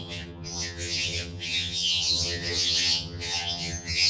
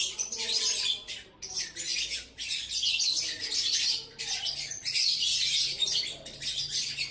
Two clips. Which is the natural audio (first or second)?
second